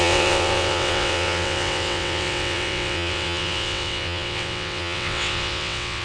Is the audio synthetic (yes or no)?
yes